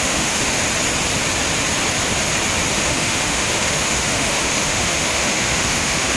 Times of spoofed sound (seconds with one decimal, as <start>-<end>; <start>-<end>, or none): 0.0-0.6; 2.7-6.2